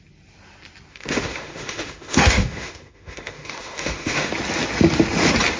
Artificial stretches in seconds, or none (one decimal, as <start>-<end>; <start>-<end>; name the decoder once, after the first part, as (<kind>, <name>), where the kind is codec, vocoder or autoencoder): 0.9-4.3 (autoencoder, DAC-VAE)

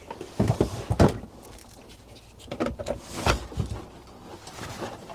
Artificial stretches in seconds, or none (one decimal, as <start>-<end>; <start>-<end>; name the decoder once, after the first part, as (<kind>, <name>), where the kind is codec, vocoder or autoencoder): none

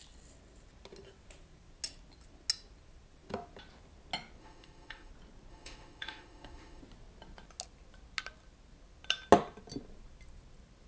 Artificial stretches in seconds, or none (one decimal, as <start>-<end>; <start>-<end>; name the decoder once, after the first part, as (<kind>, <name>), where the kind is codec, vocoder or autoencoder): 4.4-5.1 (autoencoder, DAC-VAE); 5.5-6.8

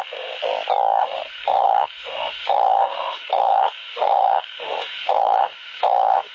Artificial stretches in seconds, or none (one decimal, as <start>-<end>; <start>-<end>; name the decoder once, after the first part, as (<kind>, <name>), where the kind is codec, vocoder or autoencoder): 0.0-0.4 (autoencoder, DAC-VAE); 1.0-6.3